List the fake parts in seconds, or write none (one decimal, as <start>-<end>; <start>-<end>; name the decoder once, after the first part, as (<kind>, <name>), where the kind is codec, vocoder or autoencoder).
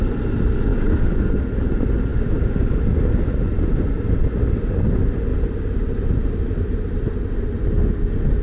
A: 0.7-1.4 (codec, DAC)